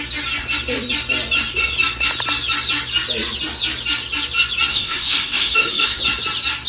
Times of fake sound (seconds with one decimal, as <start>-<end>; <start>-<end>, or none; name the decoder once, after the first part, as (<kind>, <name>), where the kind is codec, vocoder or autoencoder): 4.7-6.0 (autoencoder, DAC-VAE)